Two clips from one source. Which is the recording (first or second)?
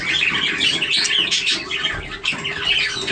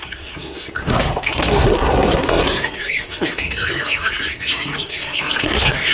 first